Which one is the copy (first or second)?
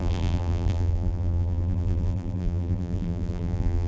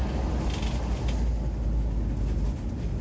first